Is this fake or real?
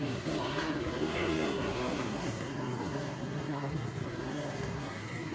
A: fake